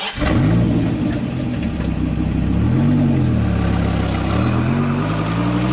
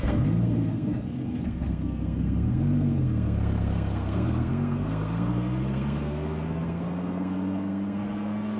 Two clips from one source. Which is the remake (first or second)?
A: second